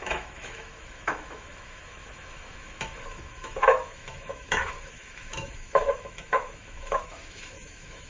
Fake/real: fake